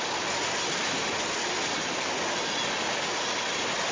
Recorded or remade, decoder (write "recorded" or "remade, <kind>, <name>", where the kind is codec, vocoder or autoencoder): recorded